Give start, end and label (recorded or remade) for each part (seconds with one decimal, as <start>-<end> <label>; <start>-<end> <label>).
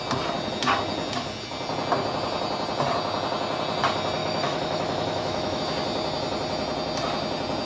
0.0-4.2 recorded; 4.2-5.6 remade; 5.6-7.7 recorded